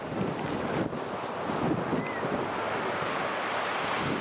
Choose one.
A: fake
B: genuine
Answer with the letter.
B